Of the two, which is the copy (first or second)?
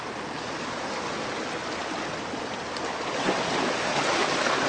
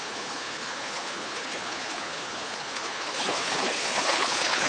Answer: second